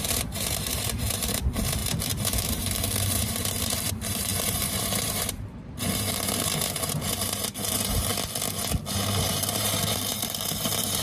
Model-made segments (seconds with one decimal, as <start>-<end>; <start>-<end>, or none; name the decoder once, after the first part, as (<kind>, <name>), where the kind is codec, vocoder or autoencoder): 0.0-8.1 (vocoder, BigVGAN v2); 8.9-11.0